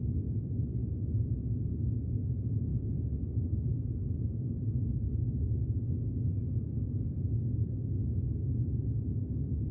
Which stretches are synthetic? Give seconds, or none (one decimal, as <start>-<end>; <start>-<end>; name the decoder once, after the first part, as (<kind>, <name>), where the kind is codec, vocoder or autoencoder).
0.8-1.7 (autoencoder, DAC-VAE)

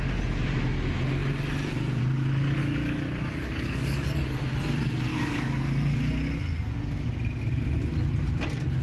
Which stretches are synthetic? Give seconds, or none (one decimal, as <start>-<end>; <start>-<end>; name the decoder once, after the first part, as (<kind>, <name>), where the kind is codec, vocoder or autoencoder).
2.6-4.4 (codec, DAC); 5.1-6.0